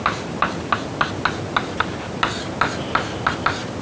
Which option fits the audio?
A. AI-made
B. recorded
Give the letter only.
B